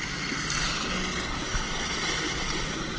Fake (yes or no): no